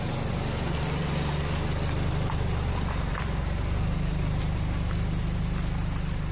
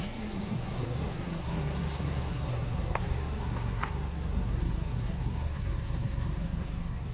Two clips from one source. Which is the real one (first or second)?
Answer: first